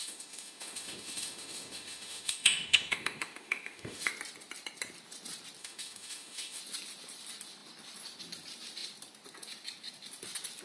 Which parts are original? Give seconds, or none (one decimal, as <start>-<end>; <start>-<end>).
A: 4.1-5.6; 6.6-10.6